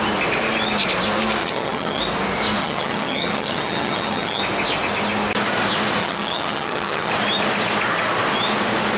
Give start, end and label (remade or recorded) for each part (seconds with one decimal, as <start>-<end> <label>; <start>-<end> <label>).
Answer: 0.0-1.4 recorded; 1.4-2.0 remade; 2.0-2.6 recorded; 2.6-4.4 remade; 4.4-6.0 recorded; 6.0-7.1 remade; 7.1-9.0 recorded